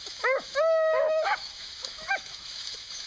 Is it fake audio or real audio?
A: fake